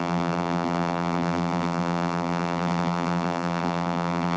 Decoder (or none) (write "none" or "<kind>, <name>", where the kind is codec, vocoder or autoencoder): vocoder, BigVGAN v2